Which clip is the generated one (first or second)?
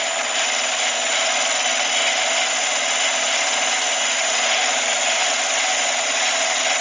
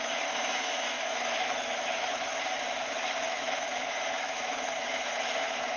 second